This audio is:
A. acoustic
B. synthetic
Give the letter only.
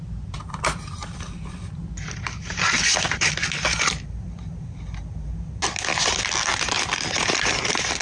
A